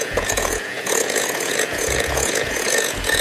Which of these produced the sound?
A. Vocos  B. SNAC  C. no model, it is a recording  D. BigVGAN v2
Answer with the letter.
A